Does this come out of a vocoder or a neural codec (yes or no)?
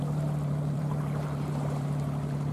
yes